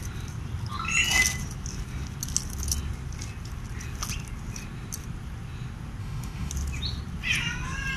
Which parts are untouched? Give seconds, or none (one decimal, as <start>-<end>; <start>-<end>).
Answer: 0.0-6.0; 6.5-8.0